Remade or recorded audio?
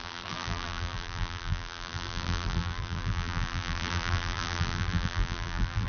remade